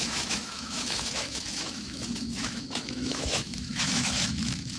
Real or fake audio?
fake